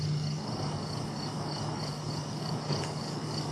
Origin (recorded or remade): remade